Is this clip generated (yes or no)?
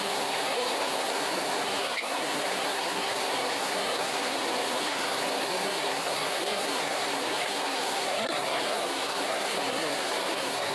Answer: yes